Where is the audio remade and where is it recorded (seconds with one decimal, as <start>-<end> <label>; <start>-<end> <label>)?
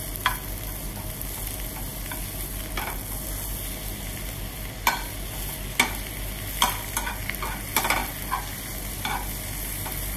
0.0-10.2 recorded